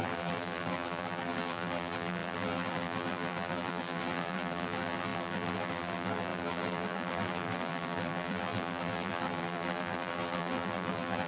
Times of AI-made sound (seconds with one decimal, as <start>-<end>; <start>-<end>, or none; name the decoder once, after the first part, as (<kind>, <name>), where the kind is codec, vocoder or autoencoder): 0.0-11.3 (vocoder, BigVGAN v2)